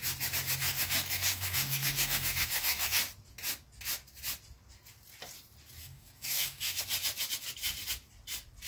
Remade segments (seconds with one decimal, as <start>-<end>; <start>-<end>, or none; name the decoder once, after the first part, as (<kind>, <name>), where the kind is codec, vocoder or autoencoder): 0.6-3.0 (codec, DAC); 5.8-6.8